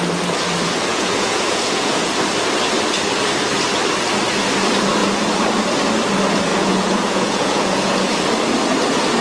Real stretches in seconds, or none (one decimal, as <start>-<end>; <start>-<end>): 0.0-0.9; 2.1-6.5; 8.2-9.2